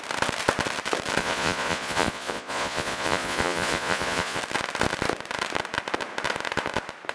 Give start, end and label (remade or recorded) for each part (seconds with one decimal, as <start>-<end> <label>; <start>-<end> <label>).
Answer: 0.0-1.2 recorded; 1.2-4.4 remade; 4.4-7.1 recorded